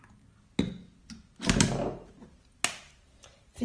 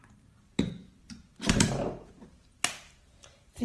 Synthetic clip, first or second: second